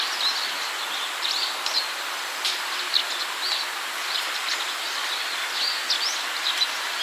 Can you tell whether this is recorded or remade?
recorded